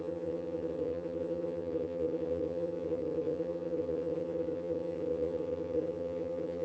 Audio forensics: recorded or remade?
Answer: remade